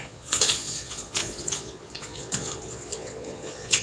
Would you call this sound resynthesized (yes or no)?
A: yes